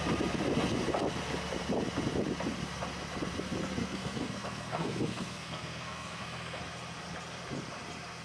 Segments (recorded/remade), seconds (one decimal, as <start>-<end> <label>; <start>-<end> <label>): 0.0-3.8 recorded; 3.8-6.6 remade; 6.6-8.2 recorded